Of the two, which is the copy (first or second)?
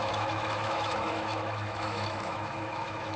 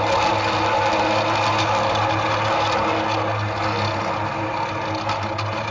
first